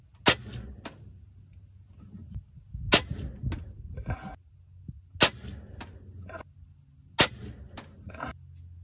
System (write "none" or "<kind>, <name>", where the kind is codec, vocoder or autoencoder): none